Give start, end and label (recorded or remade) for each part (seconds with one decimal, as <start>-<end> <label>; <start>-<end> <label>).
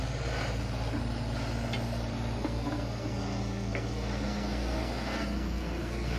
0.0-2.4 recorded; 2.4-6.2 remade